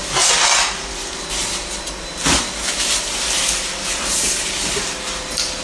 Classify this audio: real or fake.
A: real